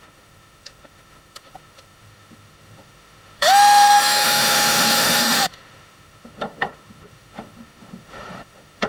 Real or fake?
fake